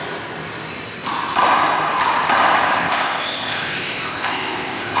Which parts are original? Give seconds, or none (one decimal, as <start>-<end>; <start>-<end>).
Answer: 0.0-2.8